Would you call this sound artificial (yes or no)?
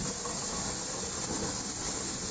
no